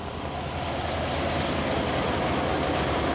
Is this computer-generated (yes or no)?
no